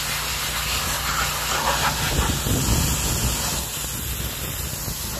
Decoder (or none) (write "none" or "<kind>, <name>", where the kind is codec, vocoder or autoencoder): none